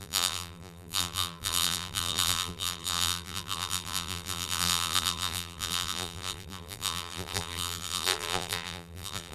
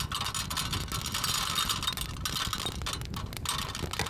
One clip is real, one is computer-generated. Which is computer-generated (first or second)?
first